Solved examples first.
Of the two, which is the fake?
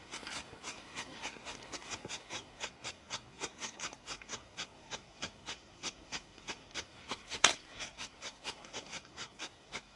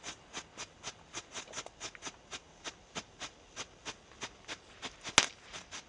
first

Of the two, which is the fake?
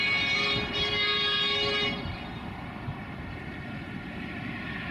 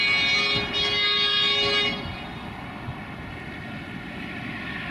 first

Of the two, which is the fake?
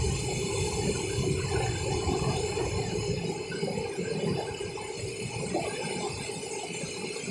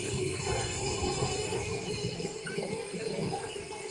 second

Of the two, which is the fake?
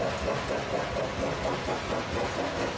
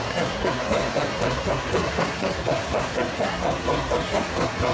second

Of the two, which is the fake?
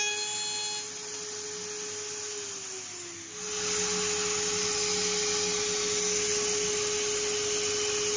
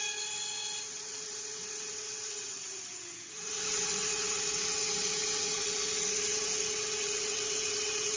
second